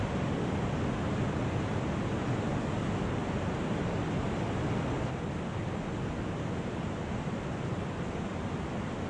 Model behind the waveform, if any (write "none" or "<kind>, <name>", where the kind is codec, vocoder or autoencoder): none